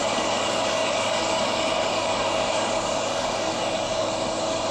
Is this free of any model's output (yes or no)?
no